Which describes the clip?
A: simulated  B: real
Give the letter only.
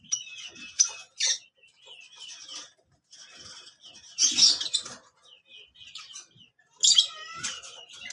B